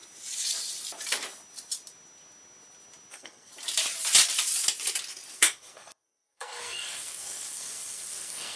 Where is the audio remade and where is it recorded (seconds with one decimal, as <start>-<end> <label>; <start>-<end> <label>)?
0.0-3.1 recorded; 3.1-3.5 remade; 3.5-5.3 recorded; 5.3-8.6 remade